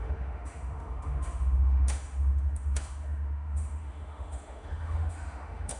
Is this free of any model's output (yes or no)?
no